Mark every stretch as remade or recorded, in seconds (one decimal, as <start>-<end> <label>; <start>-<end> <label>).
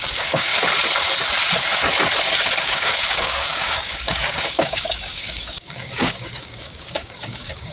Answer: 0.0-0.5 remade; 0.5-2.6 recorded; 2.6-7.7 remade